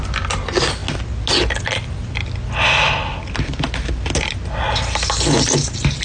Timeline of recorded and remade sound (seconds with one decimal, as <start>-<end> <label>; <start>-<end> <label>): 0.0-6.0 recorded